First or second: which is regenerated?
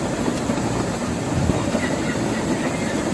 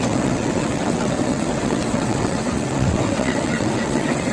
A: second